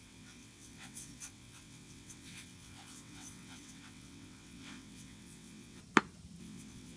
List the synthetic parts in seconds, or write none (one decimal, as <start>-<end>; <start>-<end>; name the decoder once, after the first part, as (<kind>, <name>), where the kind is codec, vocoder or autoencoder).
0.0-5.8 (vocoder, WaveNeXt); 6.4-7.0

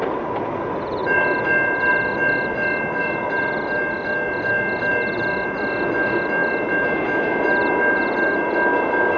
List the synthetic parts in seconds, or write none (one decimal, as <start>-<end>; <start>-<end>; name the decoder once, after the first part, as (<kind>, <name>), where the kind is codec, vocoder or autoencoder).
none

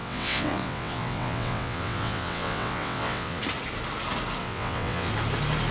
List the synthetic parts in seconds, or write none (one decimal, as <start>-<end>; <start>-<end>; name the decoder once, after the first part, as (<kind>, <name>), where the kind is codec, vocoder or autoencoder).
0.0-3.4 (vocoder, WaveNeXt); 4.4-5.1

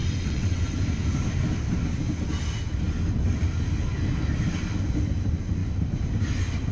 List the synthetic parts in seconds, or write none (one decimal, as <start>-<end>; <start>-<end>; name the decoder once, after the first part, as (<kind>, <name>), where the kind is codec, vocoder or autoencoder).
0.0-0.6 (vocoder, WaveNeXt)

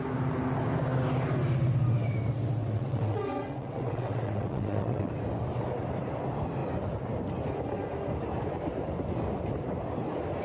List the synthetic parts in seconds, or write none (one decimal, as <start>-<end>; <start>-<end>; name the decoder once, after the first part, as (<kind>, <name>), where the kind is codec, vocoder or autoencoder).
2.6-5.1 (vocoder, WaveNeXt)